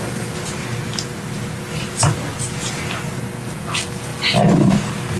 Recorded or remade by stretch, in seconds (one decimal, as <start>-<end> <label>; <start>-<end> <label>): 0.0-5.2 recorded